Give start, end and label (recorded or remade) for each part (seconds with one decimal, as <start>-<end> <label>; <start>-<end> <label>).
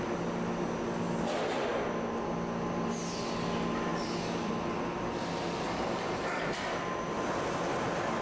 0.0-8.2 recorded